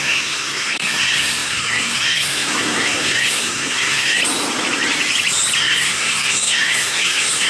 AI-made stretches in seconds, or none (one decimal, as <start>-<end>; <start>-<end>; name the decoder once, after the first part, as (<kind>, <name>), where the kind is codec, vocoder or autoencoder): 0.0-4.2 (codec, SNAC); 5.6-7.5